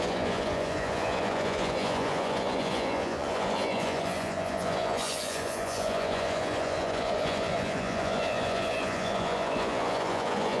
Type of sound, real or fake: fake